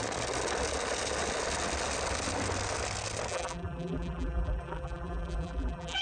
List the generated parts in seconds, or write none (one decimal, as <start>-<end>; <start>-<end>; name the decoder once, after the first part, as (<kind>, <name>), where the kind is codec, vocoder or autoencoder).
3.3-6.0 (vocoder, BigVGAN v2)